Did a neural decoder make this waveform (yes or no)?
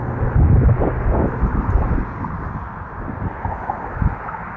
no